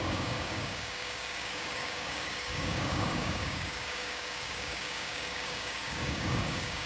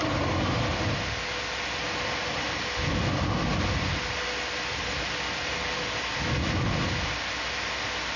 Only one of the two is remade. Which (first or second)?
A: first